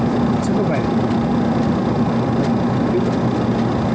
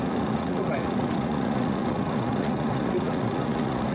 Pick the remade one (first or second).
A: second